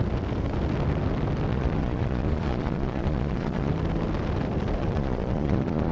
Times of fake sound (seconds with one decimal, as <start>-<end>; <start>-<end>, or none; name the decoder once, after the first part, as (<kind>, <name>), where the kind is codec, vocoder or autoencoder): 1.5-3.7 (vocoder, Vocos); 4.8-5.9